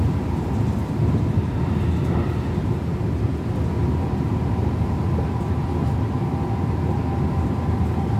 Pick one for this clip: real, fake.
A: real